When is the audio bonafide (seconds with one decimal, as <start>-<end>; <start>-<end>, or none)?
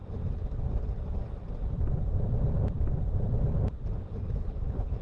0.0-4.2